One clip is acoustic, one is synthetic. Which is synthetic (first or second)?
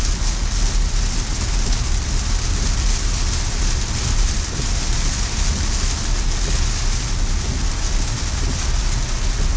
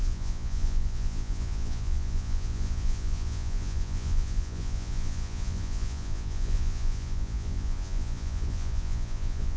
second